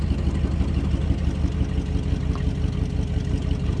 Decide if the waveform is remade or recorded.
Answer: recorded